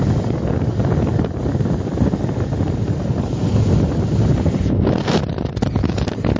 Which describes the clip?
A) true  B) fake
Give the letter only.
A